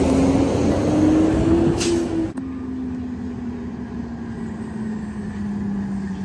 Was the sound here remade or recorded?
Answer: recorded